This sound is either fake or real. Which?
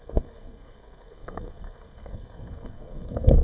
fake